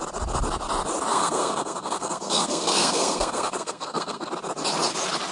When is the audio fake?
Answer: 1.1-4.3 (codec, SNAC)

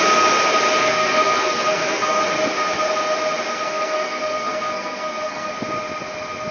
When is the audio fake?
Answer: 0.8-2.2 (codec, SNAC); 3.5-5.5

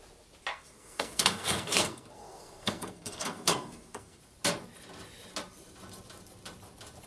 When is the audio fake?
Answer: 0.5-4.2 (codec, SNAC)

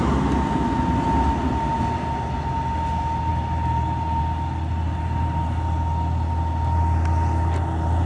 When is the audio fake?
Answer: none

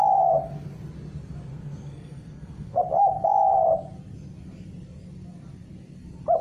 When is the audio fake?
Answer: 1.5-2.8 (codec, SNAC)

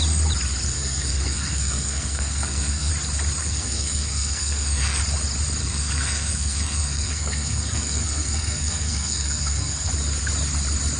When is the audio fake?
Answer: 0.7-2.9 (codec, SNAC); 3.4-5.0; 5.6-9.9

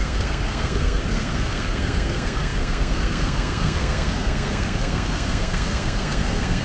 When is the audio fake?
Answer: 0.0-6.6 (codec, SNAC)